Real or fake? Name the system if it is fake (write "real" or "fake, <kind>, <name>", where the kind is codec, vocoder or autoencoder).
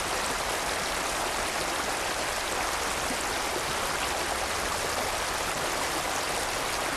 real